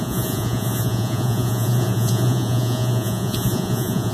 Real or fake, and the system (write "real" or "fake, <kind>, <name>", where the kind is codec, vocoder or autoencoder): fake, vocoder, Vocos